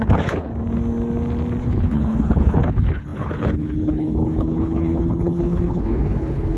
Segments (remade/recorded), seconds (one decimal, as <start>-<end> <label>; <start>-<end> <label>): 0.0-0.5 remade; 0.5-1.6 recorded; 1.6-6.6 remade

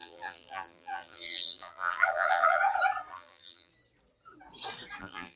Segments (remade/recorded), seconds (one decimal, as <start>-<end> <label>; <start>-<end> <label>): 0.0-2.6 remade; 2.6-3.1 recorded; 3.1-3.7 remade; 3.7-5.0 recorded; 5.0-5.4 remade

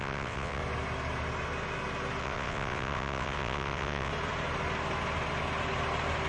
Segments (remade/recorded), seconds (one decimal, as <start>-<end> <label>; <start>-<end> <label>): 0.0-0.6 remade; 0.6-2.2 recorded; 2.2-4.1 remade; 4.1-6.3 recorded

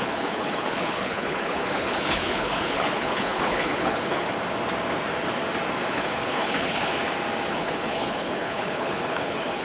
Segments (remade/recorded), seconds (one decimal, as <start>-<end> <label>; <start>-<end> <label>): 0.0-4.3 remade; 4.3-5.9 recorded; 5.9-6.9 remade; 6.9-7.5 recorded; 7.5-9.6 remade

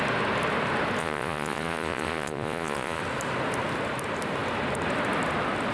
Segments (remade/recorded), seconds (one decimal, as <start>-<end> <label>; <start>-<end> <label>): 0.0-1.0 recorded; 1.0-3.0 remade; 3.0-5.7 recorded